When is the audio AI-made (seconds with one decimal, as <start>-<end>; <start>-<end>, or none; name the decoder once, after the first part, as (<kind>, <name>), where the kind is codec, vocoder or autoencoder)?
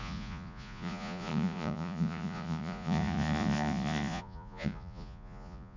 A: 0.0-5.8 (vocoder, Vocos)